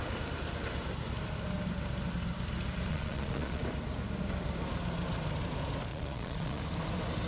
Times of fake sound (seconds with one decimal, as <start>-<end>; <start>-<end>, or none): 2.9-3.6; 5.9-6.6